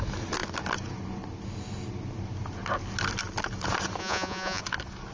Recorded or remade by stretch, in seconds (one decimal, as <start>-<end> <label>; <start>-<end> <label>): 0.0-4.0 recorded; 4.0-4.6 remade; 4.6-5.1 recorded